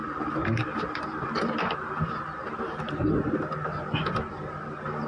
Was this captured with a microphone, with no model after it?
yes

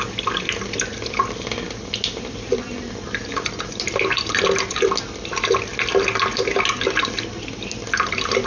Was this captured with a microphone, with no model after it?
yes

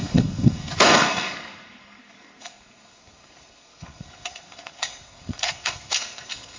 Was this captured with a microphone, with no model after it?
no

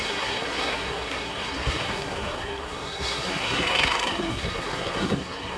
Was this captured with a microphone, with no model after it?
no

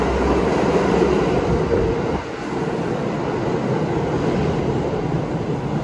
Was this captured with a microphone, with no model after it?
yes